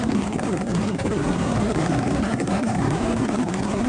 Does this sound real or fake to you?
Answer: fake